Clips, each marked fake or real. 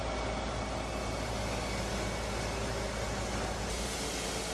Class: real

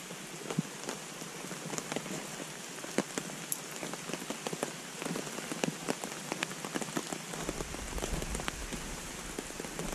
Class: real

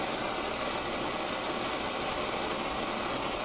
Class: real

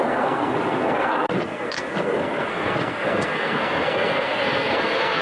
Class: fake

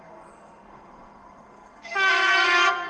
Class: fake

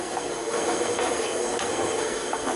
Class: fake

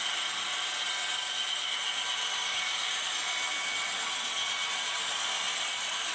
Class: real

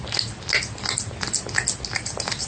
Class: real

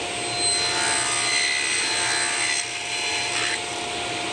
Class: real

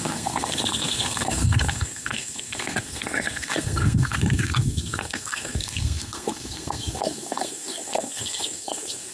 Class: fake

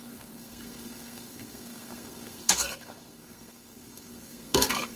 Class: fake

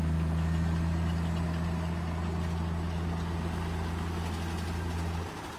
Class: real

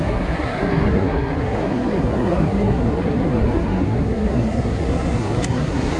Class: fake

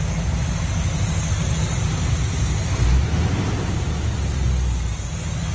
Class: real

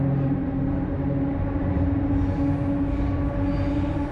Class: real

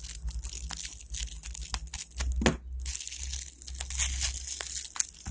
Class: real